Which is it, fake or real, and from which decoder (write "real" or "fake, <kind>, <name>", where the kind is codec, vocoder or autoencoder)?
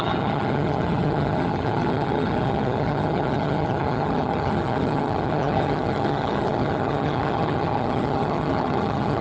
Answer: fake, vocoder, HiFi-GAN